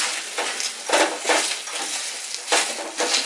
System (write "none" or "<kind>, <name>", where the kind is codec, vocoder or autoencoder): none